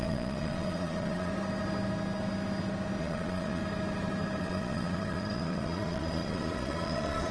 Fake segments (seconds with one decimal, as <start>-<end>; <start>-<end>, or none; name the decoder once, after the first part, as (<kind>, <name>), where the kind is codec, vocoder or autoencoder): 0.0-1.3 (vocoder, Vocos); 3.0-3.6; 4.4-7.3